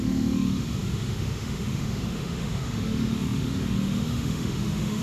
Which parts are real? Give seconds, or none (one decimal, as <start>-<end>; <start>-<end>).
none